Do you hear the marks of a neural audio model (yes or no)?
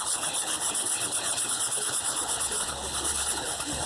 yes